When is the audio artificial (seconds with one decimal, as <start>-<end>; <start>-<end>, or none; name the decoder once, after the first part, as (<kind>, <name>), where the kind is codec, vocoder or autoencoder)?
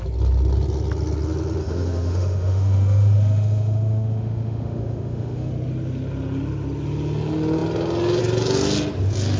1.6-5.5 (autoencoder, DAC-VAE)